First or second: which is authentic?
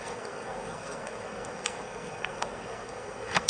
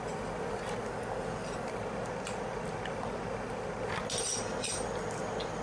second